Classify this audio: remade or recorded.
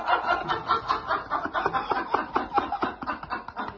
recorded